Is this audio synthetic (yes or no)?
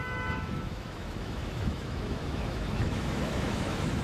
yes